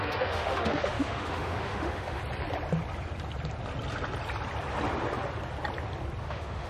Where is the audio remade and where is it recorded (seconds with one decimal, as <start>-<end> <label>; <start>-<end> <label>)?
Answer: 0.0-2.2 remade; 2.2-6.2 recorded; 6.2-6.7 remade